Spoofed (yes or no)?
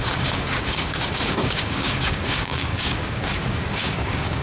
yes